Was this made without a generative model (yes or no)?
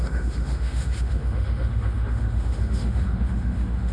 no